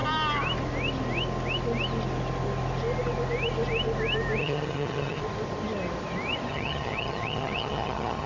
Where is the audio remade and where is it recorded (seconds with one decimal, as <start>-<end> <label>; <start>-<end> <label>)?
0.0-4.4 recorded; 4.4-5.2 remade; 5.2-6.5 recorded; 6.5-8.3 remade